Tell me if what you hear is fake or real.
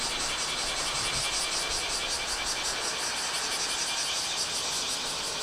real